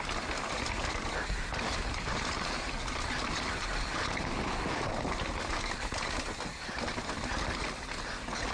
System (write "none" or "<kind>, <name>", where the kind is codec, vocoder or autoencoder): none